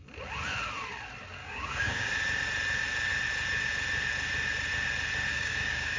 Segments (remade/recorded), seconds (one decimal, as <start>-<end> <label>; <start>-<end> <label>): 0.0-1.4 recorded; 1.4-2.1 remade; 2.1-5.3 recorded; 5.3-6.0 remade